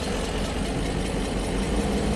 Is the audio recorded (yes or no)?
yes